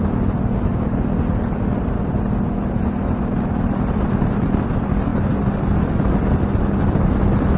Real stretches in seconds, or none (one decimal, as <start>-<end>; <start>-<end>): 0.0-7.6